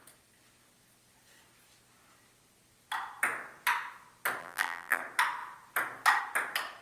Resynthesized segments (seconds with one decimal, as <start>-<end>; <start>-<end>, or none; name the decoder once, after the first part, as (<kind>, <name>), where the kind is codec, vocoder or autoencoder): 4.4-5.0 (vocoder, BigVGAN v2)